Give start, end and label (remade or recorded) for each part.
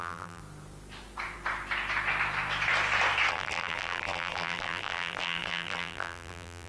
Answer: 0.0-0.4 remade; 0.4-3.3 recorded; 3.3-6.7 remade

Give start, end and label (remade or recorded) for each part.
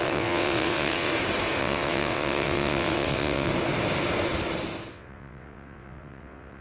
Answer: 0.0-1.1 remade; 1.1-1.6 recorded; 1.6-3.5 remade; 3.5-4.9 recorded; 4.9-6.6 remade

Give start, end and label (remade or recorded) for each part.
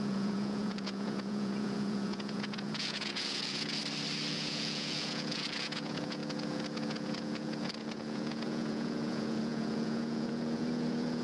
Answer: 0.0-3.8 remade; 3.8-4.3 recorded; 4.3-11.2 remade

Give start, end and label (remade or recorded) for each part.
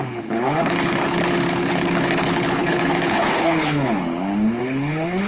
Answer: 0.0-5.3 remade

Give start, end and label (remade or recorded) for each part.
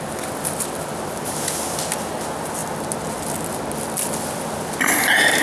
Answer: 0.0-5.4 recorded